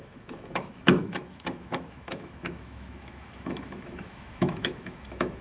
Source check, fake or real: fake